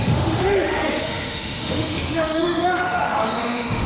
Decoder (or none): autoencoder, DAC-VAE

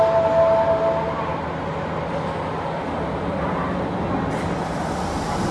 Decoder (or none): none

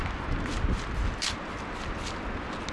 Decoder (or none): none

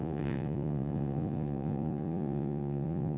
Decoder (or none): vocoder, Vocos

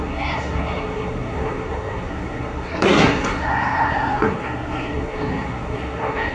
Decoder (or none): codec, SNAC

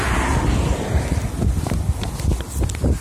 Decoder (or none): none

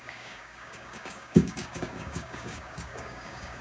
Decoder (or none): codec, DAC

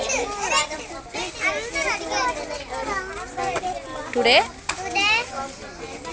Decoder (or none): none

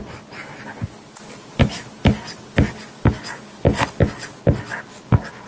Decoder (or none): none